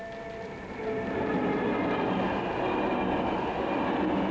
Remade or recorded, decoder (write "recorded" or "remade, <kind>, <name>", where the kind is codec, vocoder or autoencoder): recorded